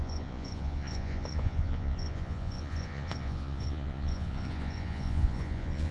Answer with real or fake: fake